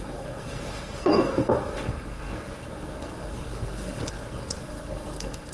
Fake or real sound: fake